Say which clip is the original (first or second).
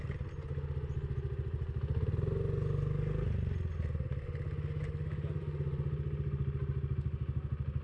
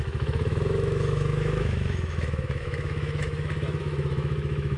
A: first